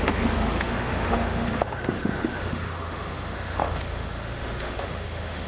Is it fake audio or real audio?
fake